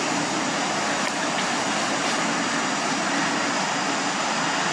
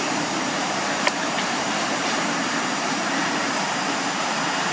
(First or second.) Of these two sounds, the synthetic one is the second